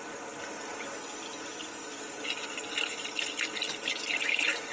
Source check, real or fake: real